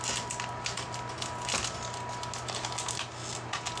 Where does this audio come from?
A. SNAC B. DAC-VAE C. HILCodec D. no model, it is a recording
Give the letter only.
D